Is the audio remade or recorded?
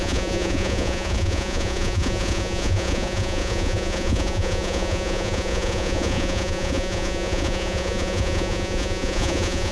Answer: remade